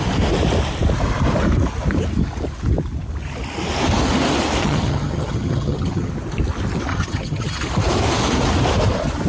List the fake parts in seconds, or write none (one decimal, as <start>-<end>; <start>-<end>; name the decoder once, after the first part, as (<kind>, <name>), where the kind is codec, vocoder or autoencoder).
4.6-6.1 (vocoder, HiFi-GAN); 6.9-7.6